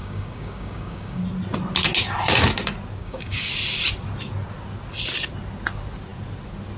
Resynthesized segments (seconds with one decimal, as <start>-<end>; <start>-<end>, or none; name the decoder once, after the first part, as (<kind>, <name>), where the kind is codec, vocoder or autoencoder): 0.0-1.2 (codec, DAC); 3.0-3.5